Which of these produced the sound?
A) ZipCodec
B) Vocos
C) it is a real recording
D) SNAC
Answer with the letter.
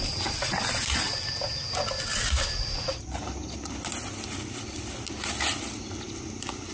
C